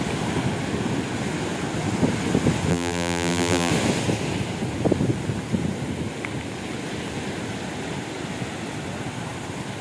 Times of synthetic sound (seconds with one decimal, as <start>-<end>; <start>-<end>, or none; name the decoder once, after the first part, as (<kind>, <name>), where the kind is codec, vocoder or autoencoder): 2.7-3.7 (vocoder, BigVGAN v2)